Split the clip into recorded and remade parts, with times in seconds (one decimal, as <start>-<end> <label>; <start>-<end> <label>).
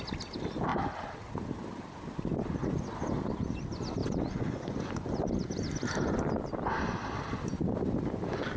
0.0-4.0 recorded; 4.0-5.1 remade; 5.1-8.6 recorded